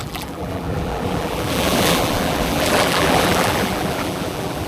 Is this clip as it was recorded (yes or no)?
no